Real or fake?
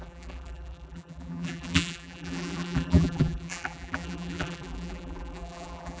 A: fake